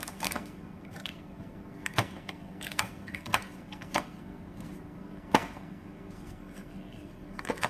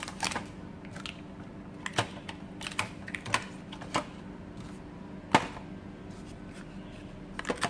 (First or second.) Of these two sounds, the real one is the second